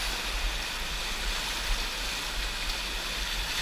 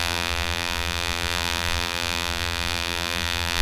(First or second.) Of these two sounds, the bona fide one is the first